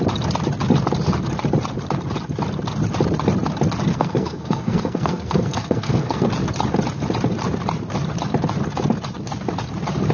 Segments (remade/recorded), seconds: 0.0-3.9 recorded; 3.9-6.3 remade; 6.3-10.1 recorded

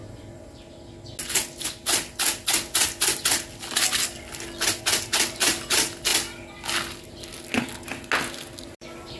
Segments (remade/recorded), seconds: 0.0-9.2 recorded

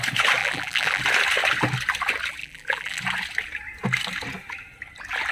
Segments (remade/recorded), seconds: 0.0-0.4 recorded; 0.4-1.0 remade; 1.0-2.4 recorded; 2.4-3.0 remade; 3.0-5.3 recorded

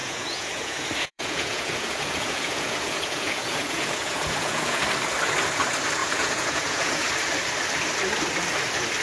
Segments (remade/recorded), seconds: 0.0-4.8 remade; 4.8-6.0 recorded; 6.0-7.1 remade; 7.1-9.0 recorded

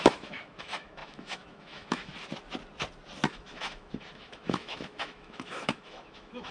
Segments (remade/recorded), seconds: 0.0-2.1 remade; 2.1-3.3 recorded; 3.3-6.5 remade